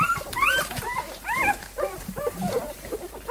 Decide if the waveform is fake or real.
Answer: fake